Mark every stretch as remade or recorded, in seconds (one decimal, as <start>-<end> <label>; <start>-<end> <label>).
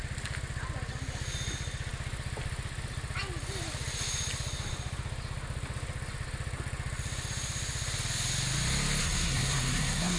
0.0-9.0 recorded; 9.0-10.2 remade